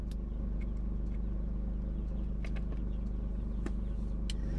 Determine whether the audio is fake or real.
real